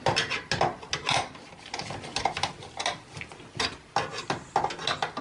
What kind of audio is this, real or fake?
real